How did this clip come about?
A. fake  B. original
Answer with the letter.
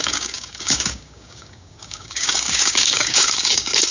A